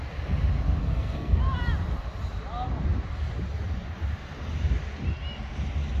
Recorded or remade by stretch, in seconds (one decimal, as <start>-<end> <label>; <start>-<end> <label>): 0.0-0.8 recorded; 0.8-1.4 remade; 1.4-6.0 recorded